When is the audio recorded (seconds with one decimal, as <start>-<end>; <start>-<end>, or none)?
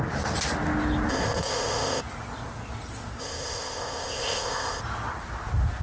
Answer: 0.0-1.1; 2.0-3.2; 4.8-5.8